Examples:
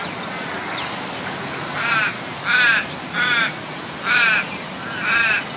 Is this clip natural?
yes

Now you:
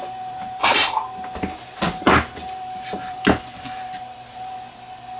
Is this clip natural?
yes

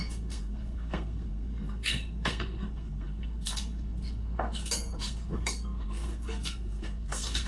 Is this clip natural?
no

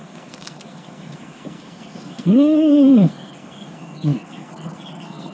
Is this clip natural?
no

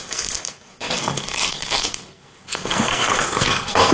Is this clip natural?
no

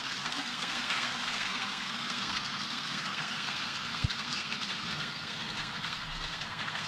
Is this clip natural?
no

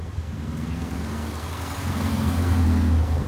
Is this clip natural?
no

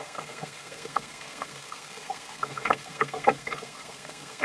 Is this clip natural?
no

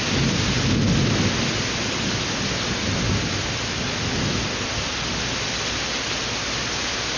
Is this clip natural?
yes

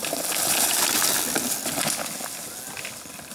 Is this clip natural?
yes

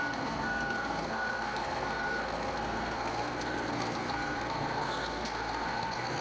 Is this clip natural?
no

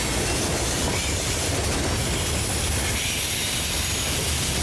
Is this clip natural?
yes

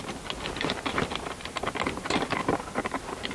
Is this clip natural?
yes